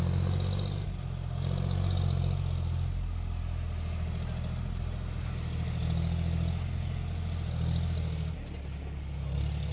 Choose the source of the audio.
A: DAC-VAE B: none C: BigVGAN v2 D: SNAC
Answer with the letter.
B